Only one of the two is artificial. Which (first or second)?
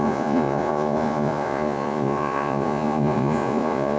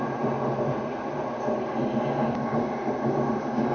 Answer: first